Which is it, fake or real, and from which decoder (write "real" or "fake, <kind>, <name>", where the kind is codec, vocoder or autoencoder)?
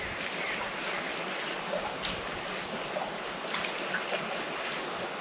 real